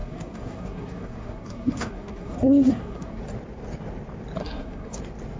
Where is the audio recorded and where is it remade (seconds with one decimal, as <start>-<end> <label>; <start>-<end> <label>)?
0.0-3.2 remade; 3.2-4.4 recorded; 4.4-5.0 remade; 5.0-5.4 recorded